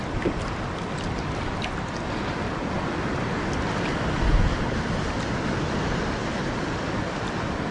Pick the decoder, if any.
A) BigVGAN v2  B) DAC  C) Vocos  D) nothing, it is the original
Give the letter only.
D